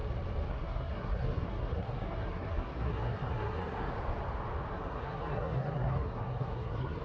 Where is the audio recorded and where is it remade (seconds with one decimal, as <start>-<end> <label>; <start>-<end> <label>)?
0.0-0.5 recorded; 0.5-3.9 remade; 3.9-4.7 recorded; 4.7-7.0 remade